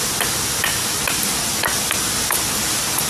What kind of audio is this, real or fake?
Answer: real